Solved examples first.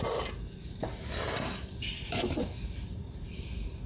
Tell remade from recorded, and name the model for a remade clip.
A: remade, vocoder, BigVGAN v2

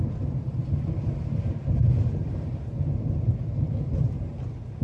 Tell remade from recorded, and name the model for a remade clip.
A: recorded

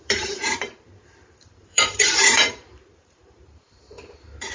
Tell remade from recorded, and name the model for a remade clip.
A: remade, vocoder, BigVGAN v2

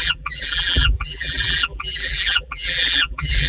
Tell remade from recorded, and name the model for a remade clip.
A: remade, vocoder, BigVGAN v2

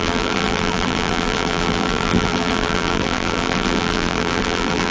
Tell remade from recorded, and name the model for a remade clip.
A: remade, vocoder, BigVGAN v2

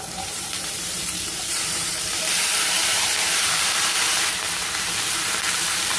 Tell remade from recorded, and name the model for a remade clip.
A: remade, vocoder, BigVGAN v2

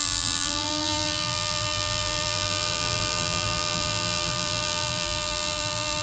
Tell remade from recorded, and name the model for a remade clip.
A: remade, vocoder, BigVGAN v2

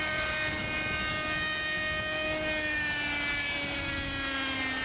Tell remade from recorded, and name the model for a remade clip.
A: recorded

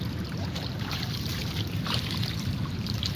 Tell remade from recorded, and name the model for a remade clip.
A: remade, vocoder, BigVGAN v2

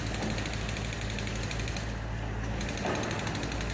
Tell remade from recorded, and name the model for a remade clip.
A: recorded